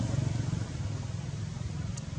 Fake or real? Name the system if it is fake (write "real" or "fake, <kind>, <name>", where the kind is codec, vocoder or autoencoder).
real